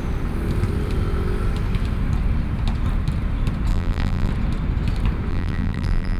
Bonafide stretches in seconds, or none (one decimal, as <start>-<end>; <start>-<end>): 0.0-3.7; 4.3-5.3